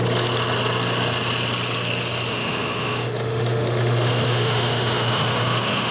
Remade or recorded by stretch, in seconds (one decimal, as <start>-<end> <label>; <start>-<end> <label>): 0.0-2.3 recorded; 2.3-5.9 remade